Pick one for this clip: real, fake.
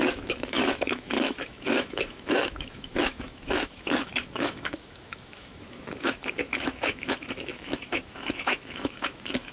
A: fake